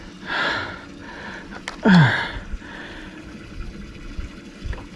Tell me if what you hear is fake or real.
real